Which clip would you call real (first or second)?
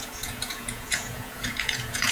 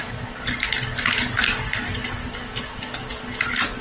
second